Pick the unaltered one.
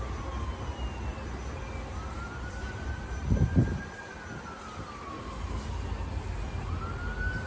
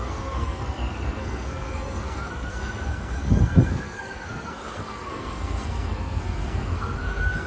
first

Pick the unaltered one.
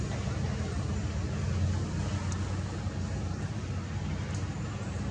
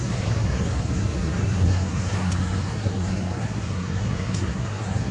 first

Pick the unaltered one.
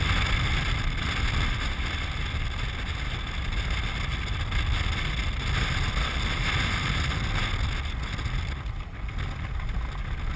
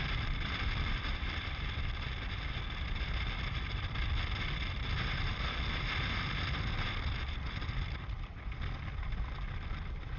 first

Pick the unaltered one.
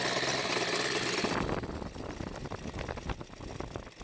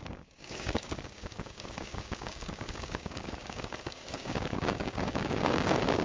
first